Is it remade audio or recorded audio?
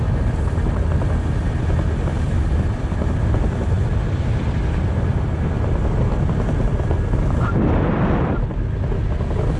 recorded